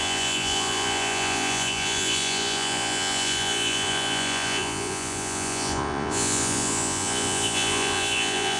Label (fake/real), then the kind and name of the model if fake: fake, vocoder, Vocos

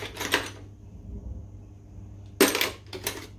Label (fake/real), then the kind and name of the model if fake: real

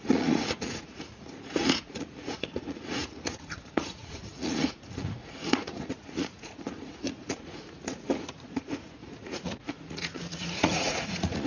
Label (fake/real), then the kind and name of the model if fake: fake, vocoder, Vocos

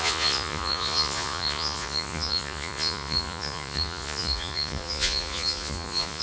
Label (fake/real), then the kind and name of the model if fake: fake, vocoder, Vocos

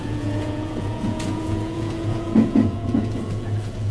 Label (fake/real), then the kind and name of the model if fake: fake, vocoder, Vocos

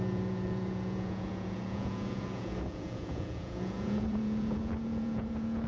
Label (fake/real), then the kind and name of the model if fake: fake, vocoder, Vocos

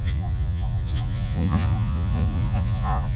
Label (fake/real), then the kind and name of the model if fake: fake, vocoder, Vocos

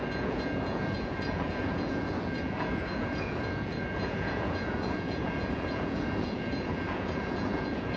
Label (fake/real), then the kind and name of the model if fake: fake, vocoder, Vocos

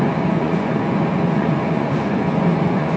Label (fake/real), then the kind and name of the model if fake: fake, vocoder, Vocos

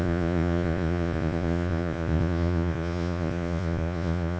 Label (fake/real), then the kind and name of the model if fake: fake, vocoder, Vocos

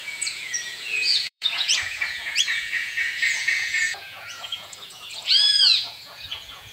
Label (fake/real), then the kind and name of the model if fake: fake, vocoder, Vocos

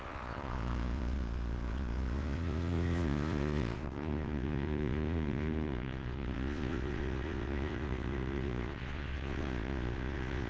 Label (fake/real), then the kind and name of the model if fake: fake, vocoder, Vocos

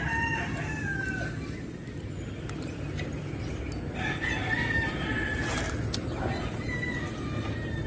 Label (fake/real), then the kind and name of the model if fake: real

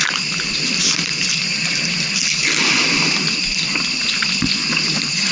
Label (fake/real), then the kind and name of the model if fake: real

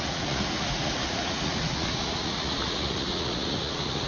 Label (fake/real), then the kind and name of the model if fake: fake, vocoder, Vocos